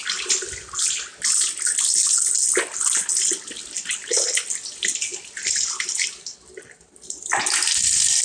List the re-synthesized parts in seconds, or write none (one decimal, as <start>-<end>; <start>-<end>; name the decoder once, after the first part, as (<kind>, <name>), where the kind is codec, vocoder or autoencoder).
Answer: none